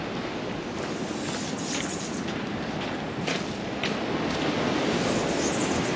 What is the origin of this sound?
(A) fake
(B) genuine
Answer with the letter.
B